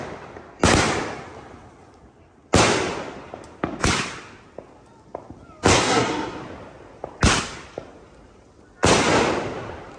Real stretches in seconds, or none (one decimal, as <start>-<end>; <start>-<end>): 0.0-5.7; 6.4-10.0